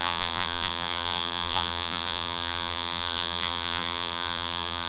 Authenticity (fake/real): fake